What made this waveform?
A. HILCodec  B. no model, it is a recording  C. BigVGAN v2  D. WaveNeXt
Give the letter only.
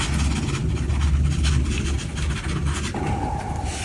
B